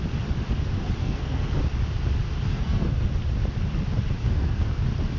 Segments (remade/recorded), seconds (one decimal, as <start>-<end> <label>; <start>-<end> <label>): 0.0-1.0 recorded; 1.0-1.5 remade; 1.5-2.5 recorded; 2.5-3.0 remade; 3.0-4.2 recorded; 4.2-4.8 remade; 4.8-5.2 recorded